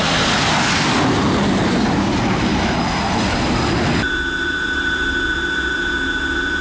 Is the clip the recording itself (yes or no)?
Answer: yes